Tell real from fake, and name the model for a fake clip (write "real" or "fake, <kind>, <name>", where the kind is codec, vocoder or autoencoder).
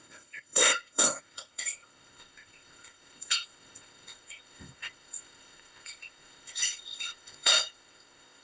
fake, codec, ZipCodec